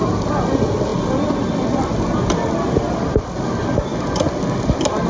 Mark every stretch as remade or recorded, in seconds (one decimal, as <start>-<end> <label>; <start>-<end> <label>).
0.0-5.1 recorded